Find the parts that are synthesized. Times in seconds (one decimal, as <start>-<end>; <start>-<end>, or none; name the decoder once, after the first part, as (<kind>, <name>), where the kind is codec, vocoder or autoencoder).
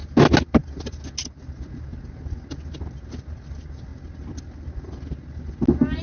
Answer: none